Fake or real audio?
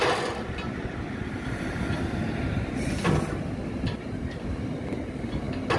real